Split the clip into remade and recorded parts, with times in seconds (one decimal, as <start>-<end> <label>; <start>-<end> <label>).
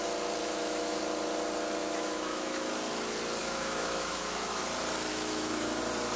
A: 0.0-0.4 recorded; 0.4-1.0 remade; 1.0-1.8 recorded; 1.8-2.7 remade; 2.7-3.4 recorded; 3.4-4.6 remade; 4.6-5.1 recorded; 5.1-5.8 remade; 5.8-6.2 recorded